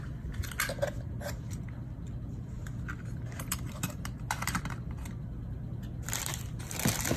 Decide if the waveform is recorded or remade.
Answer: recorded